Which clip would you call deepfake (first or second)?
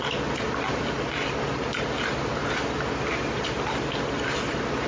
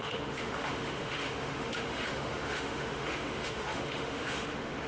second